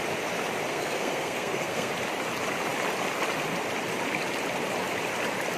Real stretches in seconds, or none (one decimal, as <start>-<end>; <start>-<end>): 0.0-0.7; 1.9-5.6